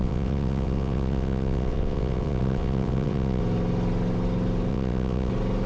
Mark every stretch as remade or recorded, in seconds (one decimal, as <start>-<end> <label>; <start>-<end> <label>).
0.0-3.4 remade; 3.4-4.7 recorded; 4.7-5.3 remade; 5.3-5.7 recorded